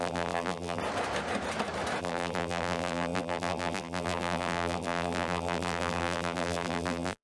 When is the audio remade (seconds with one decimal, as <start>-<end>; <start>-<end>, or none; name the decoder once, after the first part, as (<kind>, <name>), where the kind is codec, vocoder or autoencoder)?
0.0-0.8 (vocoder, BigVGAN v2); 2.0-7.2